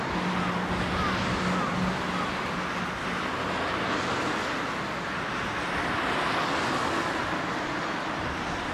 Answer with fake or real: real